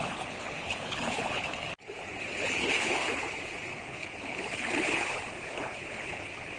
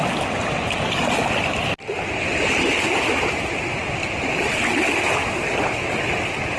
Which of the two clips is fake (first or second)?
first